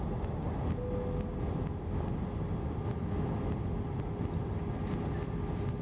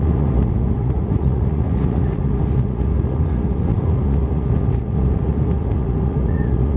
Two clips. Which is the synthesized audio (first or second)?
second